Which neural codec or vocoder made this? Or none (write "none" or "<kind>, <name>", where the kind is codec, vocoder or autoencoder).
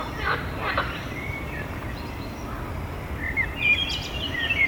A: vocoder, BigVGAN v2